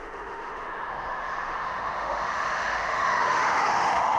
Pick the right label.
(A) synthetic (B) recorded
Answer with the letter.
A